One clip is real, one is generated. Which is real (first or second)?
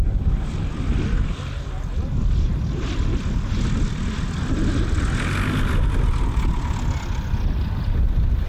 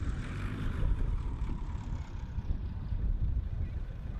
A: first